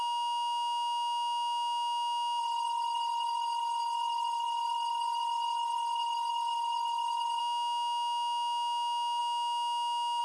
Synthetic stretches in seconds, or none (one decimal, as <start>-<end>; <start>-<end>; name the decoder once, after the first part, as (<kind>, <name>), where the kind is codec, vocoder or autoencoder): 2.4-7.4 (codec, SNAC)